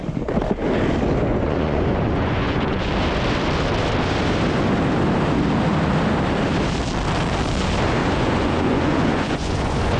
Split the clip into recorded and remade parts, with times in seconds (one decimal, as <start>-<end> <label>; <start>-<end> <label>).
0.0-1.3 recorded; 1.3-2.9 remade; 2.9-8.0 recorded; 8.0-10.0 remade